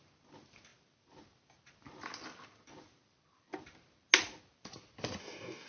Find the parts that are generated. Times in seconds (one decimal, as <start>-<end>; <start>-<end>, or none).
5.2-5.7